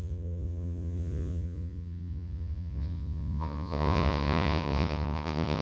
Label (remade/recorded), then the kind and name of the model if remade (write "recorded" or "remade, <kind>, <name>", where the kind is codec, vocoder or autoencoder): remade, vocoder, Vocos